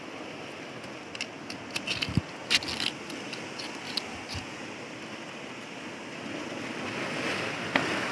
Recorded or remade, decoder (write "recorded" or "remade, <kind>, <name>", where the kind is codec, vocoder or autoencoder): recorded